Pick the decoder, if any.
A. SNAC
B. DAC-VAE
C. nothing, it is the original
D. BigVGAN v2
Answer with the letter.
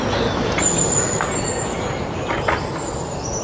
C